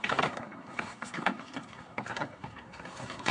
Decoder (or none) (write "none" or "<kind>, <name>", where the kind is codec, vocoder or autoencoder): codec, SNAC